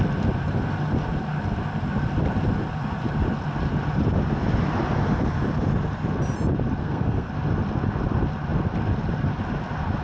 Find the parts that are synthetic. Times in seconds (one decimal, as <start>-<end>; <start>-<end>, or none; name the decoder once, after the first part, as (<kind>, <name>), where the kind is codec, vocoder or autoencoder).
6.8-7.3 (codec, SNAC)

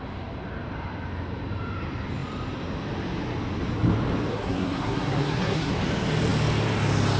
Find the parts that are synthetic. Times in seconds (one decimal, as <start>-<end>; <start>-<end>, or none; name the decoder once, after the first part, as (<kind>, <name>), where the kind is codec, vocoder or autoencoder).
4.3-5.7 (codec, SNAC)

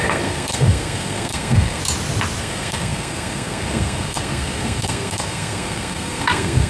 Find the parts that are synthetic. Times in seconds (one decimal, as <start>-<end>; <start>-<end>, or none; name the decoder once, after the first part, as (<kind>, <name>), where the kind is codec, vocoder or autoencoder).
0.0-1.8 (codec, SNAC); 2.4-6.7

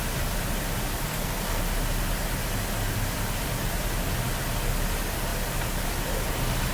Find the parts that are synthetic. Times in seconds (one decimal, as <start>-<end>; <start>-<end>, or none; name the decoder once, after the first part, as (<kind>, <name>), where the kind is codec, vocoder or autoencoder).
1.1-1.6 (codec, SNAC)

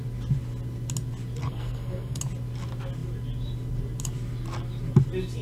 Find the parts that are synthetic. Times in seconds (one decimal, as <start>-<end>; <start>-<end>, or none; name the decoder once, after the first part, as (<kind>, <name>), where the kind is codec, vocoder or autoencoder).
1.4-2.2 (codec, SNAC)

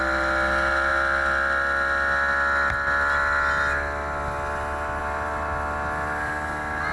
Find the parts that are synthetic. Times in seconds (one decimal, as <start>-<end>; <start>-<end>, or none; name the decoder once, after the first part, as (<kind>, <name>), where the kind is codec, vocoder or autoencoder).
none

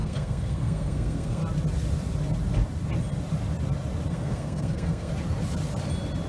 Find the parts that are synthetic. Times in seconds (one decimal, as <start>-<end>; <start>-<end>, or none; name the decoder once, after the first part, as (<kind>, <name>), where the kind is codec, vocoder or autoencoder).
0.0-1.4 (codec, SNAC); 4.1-5.1